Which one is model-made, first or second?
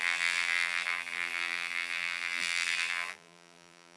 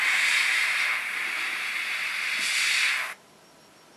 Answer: first